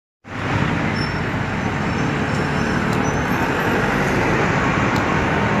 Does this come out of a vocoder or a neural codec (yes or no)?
no